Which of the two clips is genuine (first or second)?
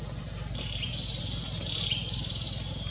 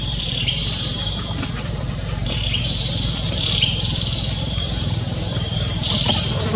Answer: first